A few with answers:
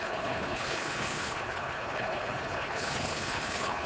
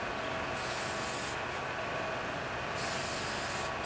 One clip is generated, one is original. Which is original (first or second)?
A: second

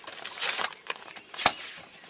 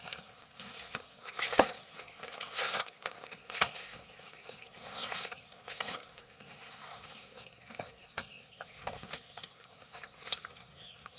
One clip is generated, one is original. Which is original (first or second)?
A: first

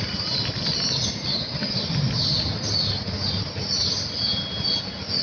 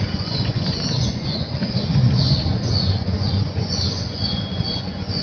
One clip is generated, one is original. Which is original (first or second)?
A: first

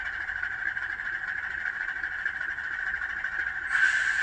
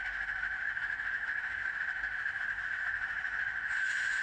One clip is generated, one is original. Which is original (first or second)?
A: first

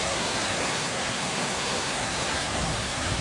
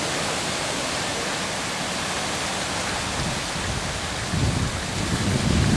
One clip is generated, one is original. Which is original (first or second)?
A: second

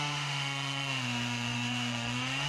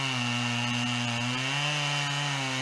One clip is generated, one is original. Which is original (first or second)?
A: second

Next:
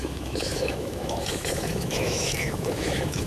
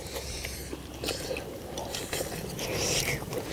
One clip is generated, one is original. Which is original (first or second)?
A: second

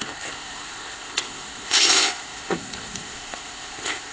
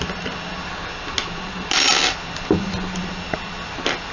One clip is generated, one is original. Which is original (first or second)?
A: second